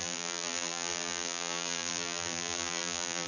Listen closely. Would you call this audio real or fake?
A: fake